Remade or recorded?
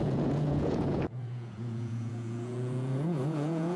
remade